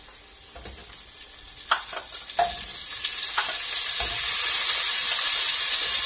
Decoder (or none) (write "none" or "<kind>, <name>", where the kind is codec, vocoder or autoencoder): none